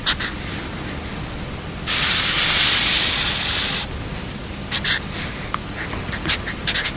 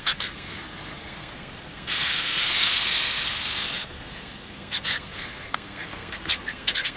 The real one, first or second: first